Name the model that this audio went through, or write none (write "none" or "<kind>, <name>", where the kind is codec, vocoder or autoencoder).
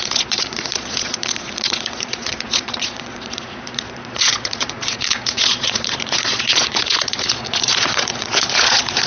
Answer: vocoder, Vocos